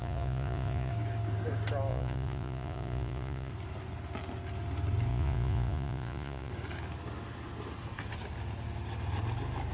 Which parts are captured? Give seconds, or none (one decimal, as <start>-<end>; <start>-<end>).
0.9-1.9; 3.5-5.1; 6.5-9.7